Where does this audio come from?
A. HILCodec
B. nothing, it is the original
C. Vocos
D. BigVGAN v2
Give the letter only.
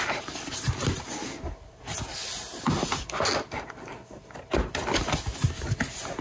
B